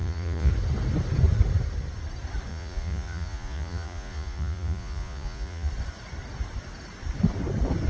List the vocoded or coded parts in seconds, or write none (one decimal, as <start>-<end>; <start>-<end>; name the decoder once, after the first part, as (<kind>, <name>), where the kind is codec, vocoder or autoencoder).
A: 0.0-0.5 (vocoder, Vocos); 2.5-5.7